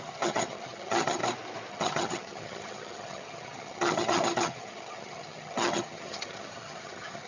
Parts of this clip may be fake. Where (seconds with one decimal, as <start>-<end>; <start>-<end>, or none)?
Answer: 0.0-1.2; 1.7-7.3